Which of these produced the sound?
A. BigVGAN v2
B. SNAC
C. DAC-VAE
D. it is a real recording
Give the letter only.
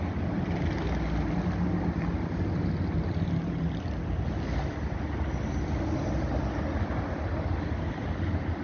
D